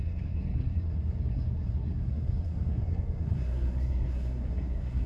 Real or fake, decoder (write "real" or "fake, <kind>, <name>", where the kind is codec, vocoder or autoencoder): fake, codec, SNAC